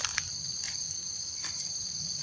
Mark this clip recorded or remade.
recorded